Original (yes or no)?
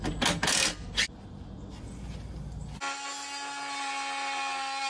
yes